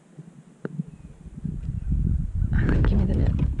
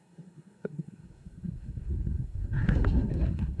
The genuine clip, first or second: first